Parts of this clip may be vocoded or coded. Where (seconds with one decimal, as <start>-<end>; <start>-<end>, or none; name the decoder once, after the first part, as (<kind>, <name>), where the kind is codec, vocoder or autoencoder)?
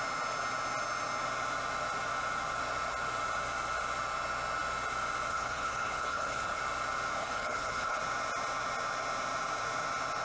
5.3-6.6 (codec, HILCodec); 7.2-8.0